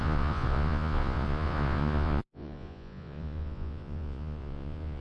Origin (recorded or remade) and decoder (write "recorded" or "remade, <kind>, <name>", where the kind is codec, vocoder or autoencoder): remade, vocoder, Vocos